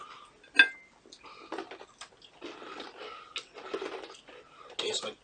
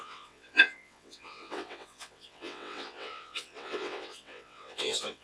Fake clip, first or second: second